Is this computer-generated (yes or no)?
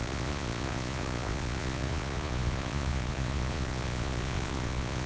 yes